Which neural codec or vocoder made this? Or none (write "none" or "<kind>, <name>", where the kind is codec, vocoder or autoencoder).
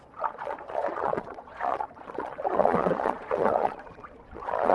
vocoder, Vocos